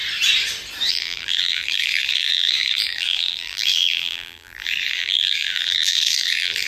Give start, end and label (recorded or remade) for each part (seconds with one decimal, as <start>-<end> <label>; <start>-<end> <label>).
0.0-0.9 recorded; 0.9-6.7 remade